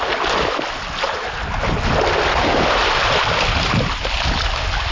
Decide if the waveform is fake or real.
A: real